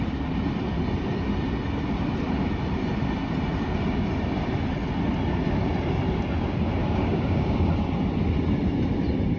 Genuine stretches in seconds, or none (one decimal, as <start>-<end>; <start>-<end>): 0.0-6.8; 7.7-9.4